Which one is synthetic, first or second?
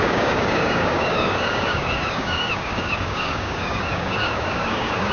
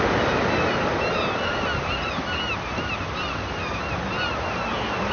first